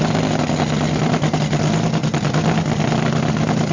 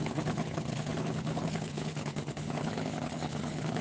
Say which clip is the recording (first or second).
first